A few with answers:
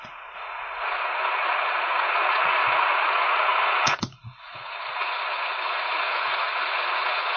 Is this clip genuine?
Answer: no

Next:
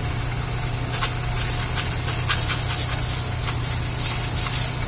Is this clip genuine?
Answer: yes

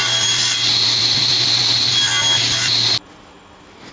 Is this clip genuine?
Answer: yes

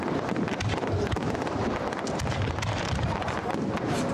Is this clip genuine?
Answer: yes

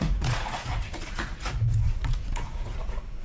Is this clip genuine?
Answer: no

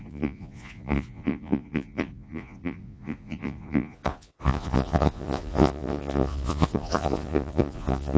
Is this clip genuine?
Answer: no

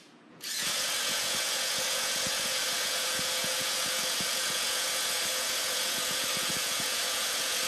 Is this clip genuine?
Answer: no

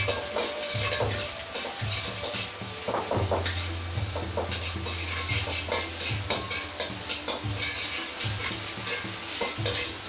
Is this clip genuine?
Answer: yes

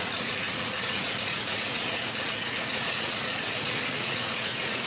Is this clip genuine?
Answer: no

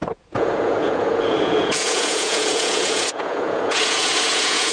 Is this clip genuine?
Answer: no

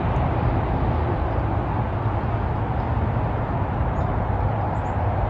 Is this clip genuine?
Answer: yes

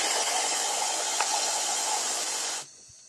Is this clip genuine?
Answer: no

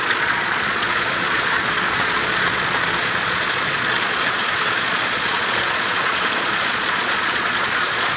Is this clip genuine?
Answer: no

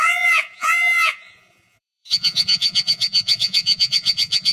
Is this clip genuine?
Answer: no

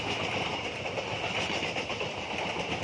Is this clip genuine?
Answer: yes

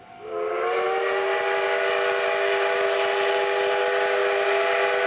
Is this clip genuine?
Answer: yes